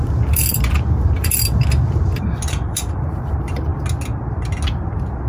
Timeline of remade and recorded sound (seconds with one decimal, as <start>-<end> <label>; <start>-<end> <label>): 0.0-3.7 remade; 3.7-5.3 recorded